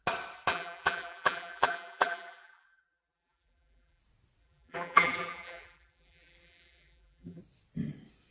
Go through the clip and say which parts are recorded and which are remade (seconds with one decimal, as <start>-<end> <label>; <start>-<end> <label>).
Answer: 0.0-0.5 recorded; 0.5-4.0 remade; 4.0-4.4 recorded; 4.4-7.4 remade; 7.4-8.3 recorded